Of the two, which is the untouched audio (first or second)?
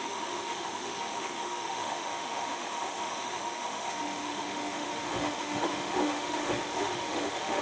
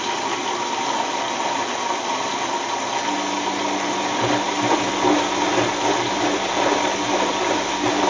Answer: second